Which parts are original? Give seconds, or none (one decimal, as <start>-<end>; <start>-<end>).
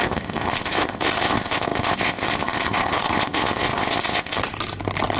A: 4.4-5.2